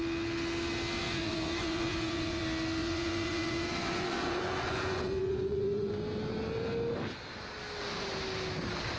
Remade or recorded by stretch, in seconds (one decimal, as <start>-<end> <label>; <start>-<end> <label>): 0.0-1.0 recorded; 1.0-2.4 remade; 2.4-2.8 recorded; 2.8-5.9 remade; 5.9-9.0 recorded